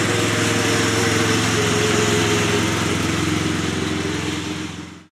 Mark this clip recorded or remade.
recorded